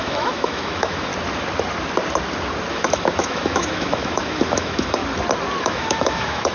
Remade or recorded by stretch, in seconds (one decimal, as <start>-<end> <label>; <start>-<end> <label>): 0.0-1.1 remade; 1.1-2.7 recorded; 2.7-5.0 remade; 5.0-5.6 recorded; 5.6-6.5 remade